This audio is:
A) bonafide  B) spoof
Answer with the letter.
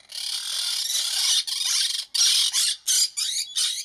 A